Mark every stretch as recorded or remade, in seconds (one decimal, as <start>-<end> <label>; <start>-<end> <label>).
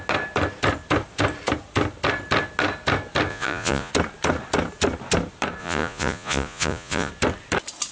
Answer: 0.0-3.3 recorded; 3.3-3.9 remade; 3.9-5.6 recorded; 5.6-7.1 remade; 7.1-7.9 recorded